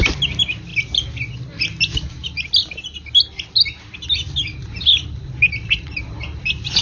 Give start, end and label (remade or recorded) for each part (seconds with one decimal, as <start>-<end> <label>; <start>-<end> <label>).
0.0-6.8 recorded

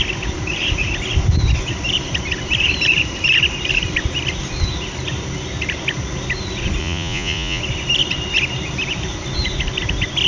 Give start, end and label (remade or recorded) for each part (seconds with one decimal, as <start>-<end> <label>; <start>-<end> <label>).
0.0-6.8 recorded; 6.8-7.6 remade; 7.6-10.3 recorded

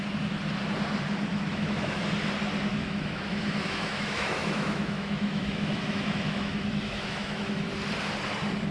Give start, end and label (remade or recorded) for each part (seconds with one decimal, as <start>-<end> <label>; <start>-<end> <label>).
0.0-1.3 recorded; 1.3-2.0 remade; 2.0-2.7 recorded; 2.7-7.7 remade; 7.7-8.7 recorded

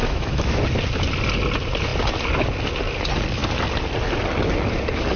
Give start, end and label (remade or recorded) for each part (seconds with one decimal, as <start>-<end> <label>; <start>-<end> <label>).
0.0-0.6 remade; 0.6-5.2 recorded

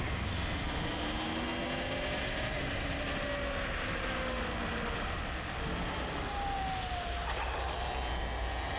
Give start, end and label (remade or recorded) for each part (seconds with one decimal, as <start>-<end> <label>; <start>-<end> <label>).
0.0-8.8 recorded

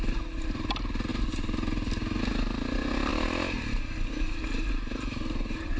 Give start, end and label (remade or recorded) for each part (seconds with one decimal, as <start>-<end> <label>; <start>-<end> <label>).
0.0-5.8 recorded

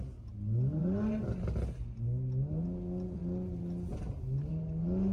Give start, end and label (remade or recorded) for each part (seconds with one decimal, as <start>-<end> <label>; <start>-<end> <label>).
0.0-5.1 recorded

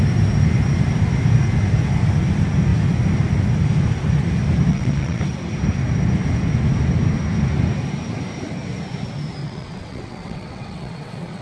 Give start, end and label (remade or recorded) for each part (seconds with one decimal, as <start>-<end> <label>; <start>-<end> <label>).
0.0-4.7 recorded; 4.7-5.2 remade; 5.2-9.4 recorded; 9.4-11.4 remade